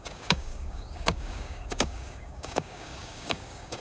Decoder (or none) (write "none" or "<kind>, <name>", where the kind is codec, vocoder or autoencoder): codec, DAC